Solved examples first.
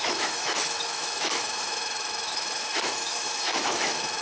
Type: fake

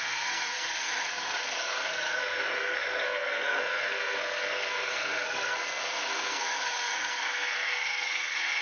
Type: fake